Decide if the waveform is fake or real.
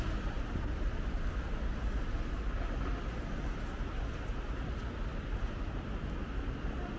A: real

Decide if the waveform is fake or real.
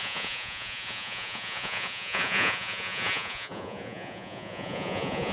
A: fake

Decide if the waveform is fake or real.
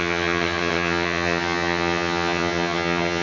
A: fake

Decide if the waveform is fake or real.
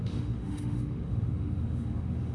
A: fake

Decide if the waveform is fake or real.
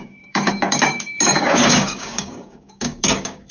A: fake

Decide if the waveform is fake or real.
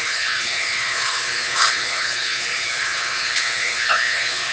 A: fake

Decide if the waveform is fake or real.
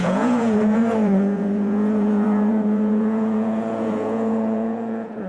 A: fake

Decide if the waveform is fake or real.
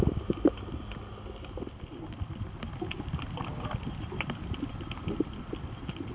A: real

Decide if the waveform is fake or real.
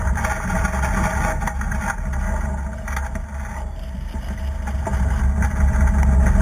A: real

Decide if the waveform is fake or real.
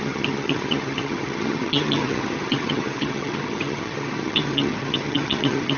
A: fake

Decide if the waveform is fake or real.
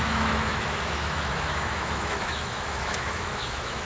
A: fake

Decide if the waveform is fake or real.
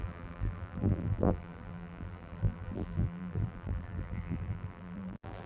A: fake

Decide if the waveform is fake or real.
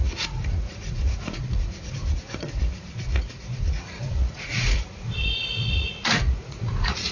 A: fake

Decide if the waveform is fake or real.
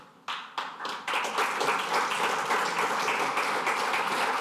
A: real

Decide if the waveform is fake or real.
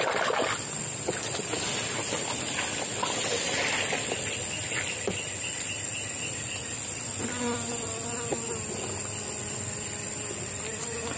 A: real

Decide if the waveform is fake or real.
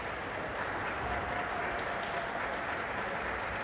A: real